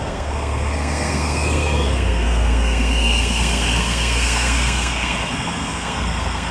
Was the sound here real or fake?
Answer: fake